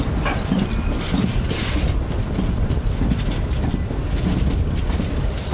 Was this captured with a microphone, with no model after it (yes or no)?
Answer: yes